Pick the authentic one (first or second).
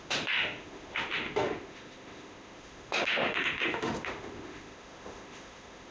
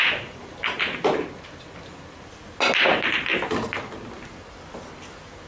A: second